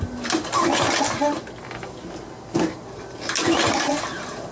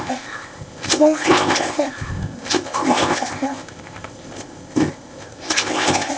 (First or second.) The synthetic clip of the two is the second